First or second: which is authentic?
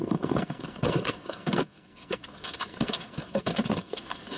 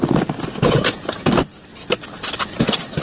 second